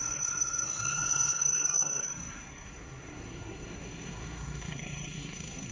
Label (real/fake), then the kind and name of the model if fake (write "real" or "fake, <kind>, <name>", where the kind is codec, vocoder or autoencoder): fake, codec, SNAC